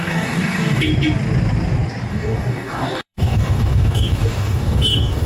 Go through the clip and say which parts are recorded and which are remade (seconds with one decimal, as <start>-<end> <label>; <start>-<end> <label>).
0.0-0.9 remade; 0.9-2.1 recorded; 2.1-5.3 remade